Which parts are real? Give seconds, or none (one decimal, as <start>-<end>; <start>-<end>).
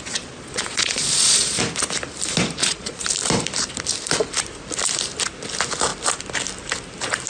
0.0-0.5; 1.6-2.6; 3.1-7.3